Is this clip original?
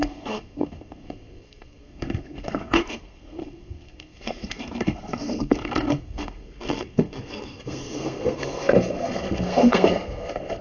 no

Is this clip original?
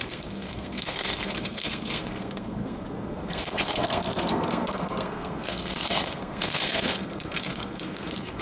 no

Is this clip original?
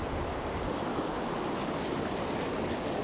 yes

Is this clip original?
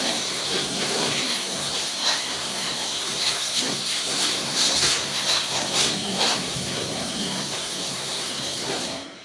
no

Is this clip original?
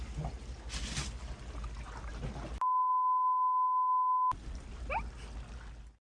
yes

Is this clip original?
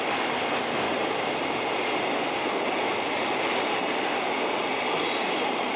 yes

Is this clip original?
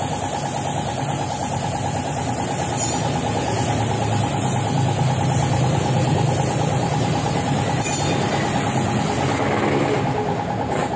yes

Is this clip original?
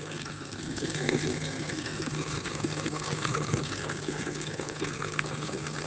no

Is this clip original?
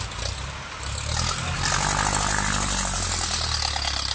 yes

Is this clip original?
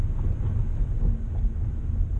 yes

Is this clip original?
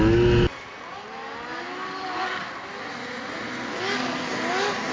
yes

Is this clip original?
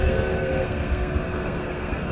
no